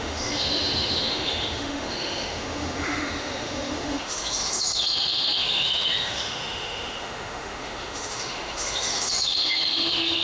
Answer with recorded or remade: remade